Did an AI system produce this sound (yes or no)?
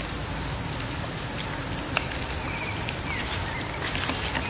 no